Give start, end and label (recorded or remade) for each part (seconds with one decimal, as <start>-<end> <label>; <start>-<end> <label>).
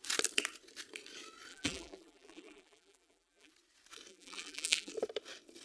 0.0-1.5 recorded; 1.5-3.5 remade; 3.5-4.1 recorded; 4.1-4.9 remade; 4.9-5.6 recorded